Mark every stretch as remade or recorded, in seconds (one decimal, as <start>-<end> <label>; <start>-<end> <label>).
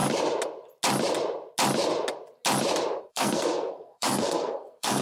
0.0-3.0 recorded; 3.0-5.0 remade